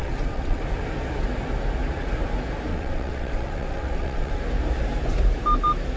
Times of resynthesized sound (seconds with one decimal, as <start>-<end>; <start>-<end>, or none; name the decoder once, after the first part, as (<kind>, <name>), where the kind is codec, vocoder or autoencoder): 0.0-0.6 (vocoder, WaveNeXt); 2.7-4.4